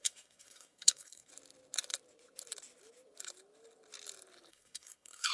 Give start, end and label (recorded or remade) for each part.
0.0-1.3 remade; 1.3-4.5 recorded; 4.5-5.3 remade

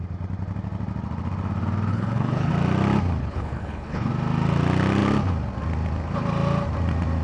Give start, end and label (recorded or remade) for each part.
0.0-1.9 recorded; 1.9-2.5 remade; 2.5-3.2 recorded; 3.2-4.1 remade; 4.1-7.2 recorded

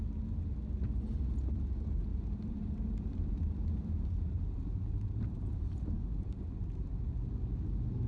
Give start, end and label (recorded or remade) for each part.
0.0-2.1 recorded; 2.1-6.9 remade; 6.9-8.1 recorded

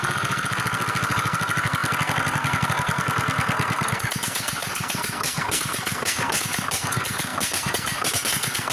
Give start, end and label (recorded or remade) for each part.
0.0-8.7 remade

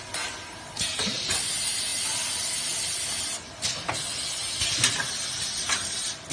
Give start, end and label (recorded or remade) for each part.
0.0-6.3 recorded

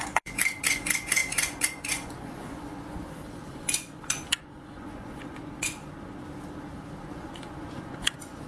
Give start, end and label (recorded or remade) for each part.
0.0-3.0 remade; 3.0-3.5 recorded; 3.5-5.8 remade; 5.8-7.0 recorded; 7.0-8.5 remade

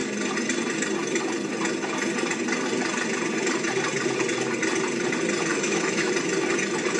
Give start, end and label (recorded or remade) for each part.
0.0-5.5 recorded; 5.5-6.1 remade; 6.1-7.0 recorded

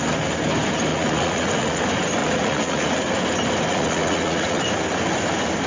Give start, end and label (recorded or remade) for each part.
0.0-0.9 recorded; 0.9-1.8 remade; 1.8-2.2 recorded; 2.2-3.1 remade; 3.1-3.7 recorded; 3.7-4.6 remade; 4.6-5.7 recorded